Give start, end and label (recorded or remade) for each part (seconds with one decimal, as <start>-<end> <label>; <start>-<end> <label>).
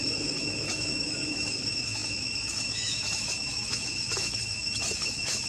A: 0.0-5.5 remade